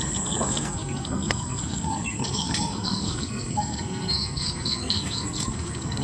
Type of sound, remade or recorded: remade